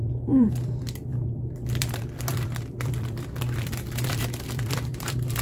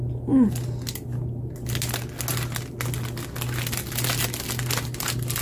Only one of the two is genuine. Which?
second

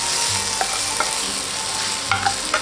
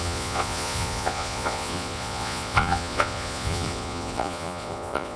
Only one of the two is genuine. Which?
first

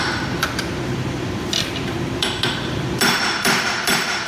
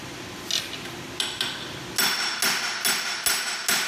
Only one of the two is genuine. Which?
second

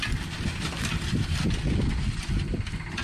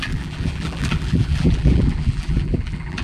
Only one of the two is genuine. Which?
first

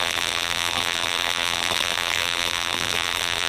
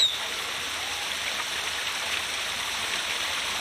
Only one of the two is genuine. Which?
second